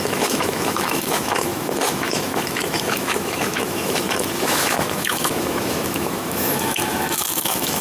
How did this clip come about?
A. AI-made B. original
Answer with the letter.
A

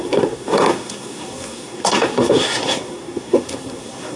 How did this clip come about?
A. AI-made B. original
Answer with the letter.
A